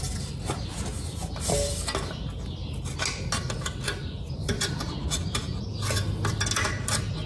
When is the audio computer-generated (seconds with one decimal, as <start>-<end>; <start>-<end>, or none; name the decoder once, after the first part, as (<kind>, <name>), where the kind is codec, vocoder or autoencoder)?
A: none